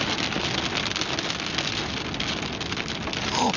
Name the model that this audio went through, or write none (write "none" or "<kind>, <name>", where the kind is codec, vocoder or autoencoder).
none